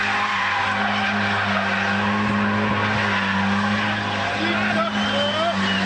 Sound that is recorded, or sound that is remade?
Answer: recorded